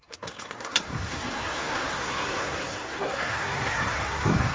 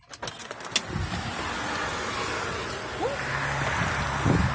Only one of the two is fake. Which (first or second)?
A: first